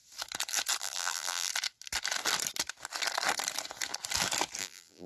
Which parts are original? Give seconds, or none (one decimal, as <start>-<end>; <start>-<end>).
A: 0.0-0.8; 1.5-4.6